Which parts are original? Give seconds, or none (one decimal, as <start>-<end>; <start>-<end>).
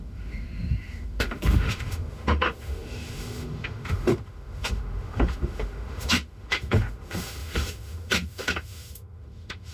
none